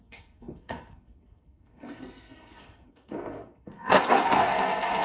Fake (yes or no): yes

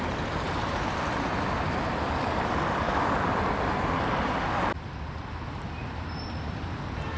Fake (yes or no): no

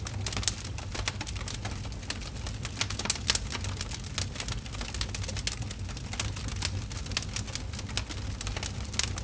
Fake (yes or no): no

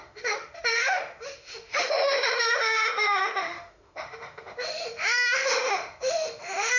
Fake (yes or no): yes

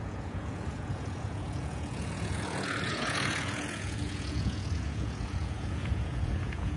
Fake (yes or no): yes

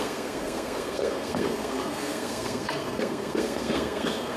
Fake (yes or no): yes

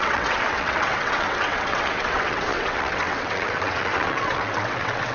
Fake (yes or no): yes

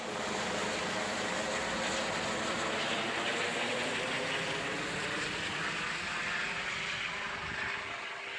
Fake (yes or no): no